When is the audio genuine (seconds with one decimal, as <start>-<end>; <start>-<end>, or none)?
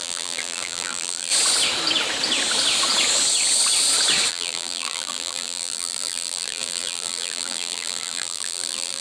1.3-4.3